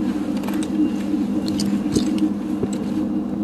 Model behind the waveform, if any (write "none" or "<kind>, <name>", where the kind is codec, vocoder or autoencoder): none